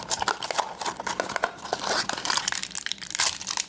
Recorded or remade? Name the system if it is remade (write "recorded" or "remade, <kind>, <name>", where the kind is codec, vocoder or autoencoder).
remade, vocoder, BigVGAN v2